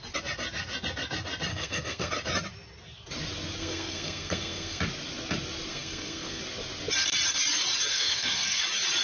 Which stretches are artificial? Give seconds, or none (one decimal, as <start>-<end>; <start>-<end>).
1.5-2.1; 3.6-4.8; 5.7-6.4; 7.9-8.6